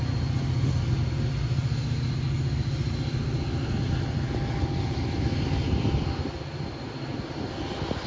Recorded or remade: recorded